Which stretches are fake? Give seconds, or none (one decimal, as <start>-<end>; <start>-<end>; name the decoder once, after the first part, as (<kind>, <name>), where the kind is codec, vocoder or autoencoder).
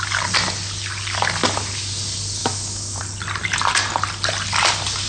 2.4-3.0 (autoencoder, DAC-VAE)